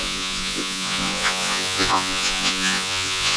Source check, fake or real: fake